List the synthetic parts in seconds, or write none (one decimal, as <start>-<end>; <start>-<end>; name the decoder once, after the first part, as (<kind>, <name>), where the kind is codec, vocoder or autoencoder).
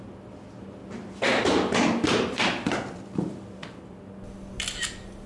0.8-4.0 (vocoder, BigVGAN v2)